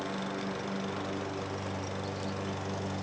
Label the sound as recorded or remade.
recorded